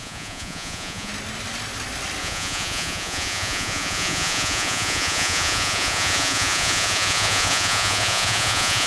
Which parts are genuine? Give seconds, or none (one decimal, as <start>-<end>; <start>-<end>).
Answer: 1.1-2.2